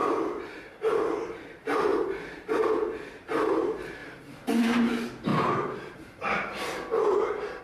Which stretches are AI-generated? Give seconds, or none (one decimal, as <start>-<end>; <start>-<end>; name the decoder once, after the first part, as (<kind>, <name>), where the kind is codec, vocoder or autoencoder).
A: 1.5-1.9 (vocoder, BigVGAN v2); 2.5-7.6